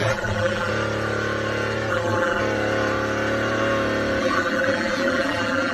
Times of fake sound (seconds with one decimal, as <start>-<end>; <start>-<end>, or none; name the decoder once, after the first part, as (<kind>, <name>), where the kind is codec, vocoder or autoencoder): 0.0-0.7 (vocoder, BigVGAN v2); 1.9-2.4; 4.2-5.7